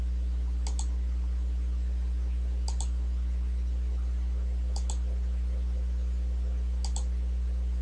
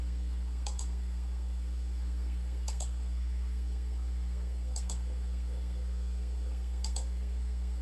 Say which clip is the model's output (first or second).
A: second